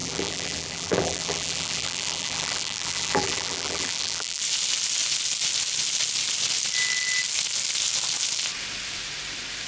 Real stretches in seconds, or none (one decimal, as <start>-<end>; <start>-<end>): 4.4-9.7

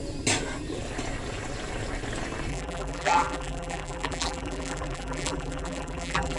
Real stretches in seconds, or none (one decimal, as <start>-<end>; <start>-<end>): 0.0-2.5

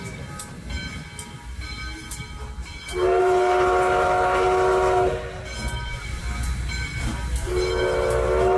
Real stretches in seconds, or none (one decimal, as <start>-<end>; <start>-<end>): 0.0-8.6

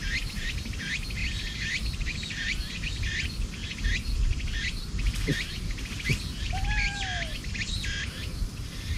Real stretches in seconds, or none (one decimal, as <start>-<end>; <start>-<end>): 0.0-1.2; 2.9-3.6; 7.5-9.0

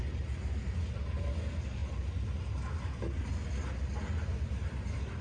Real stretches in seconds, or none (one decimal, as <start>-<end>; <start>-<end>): 0.0-1.8; 2.8-5.2